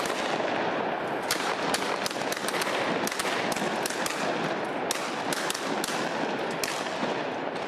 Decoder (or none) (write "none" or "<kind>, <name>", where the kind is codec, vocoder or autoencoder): none